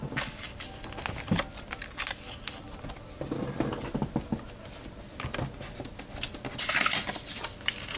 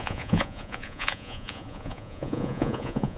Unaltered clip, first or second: first